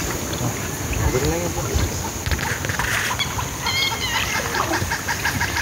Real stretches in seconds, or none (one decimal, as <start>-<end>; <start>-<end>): 0.0-5.6